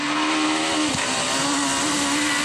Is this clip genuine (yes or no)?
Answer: yes